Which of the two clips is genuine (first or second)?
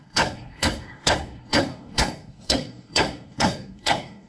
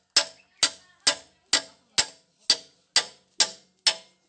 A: second